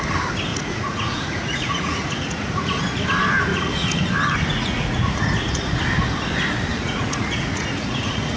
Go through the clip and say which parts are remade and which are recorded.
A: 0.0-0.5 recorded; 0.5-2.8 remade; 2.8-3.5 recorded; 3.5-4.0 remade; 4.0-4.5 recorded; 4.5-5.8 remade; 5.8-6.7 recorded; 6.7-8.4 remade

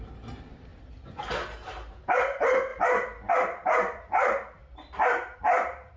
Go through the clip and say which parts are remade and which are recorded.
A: 0.0-0.7 remade; 0.7-1.9 recorded; 1.9-2.7 remade; 2.7-3.3 recorded; 3.3-4.6 remade; 4.6-5.4 recorded; 5.4-6.0 remade

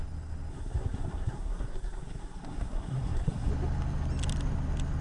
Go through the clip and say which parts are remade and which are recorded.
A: 0.0-0.5 recorded; 0.5-3.5 remade; 3.5-5.0 recorded

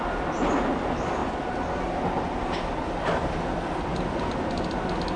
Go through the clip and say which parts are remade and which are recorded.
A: 0.0-5.2 recorded

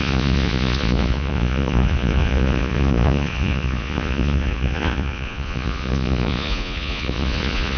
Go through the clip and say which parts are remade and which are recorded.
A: 0.0-7.8 remade

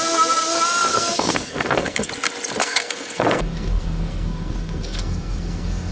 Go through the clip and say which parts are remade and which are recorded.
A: 0.0-0.9 recorded; 0.9-2.1 remade; 2.1-2.6 recorded; 2.6-5.9 remade

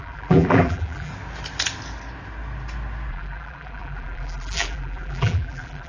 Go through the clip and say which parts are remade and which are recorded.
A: 0.0-1.1 remade; 1.1-3.1 recorded; 3.1-5.9 remade

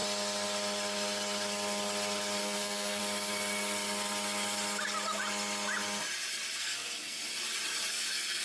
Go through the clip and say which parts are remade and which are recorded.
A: 0.0-2.4 recorded; 2.4-3.0 remade; 3.0-6.6 recorded; 6.6-7.2 remade; 7.2-7.9 recorded; 7.9-8.4 remade